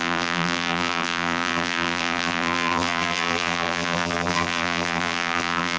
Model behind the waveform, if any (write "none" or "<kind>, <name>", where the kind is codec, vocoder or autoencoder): vocoder, BigVGAN v2